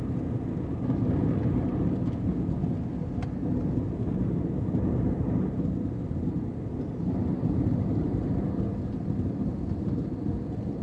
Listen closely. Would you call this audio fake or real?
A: real